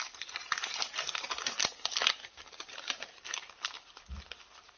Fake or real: real